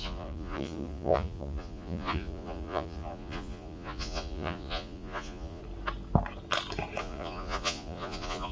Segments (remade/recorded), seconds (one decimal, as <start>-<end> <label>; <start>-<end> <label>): 0.0-5.6 remade; 5.6-7.0 recorded; 7.0-8.5 remade